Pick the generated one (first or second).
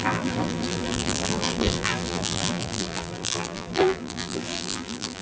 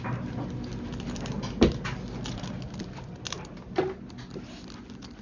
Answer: first